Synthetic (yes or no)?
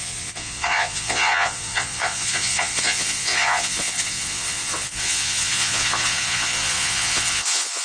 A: yes